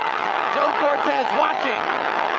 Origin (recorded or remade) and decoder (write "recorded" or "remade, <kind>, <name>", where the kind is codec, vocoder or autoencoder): remade, vocoder, HiFi-GAN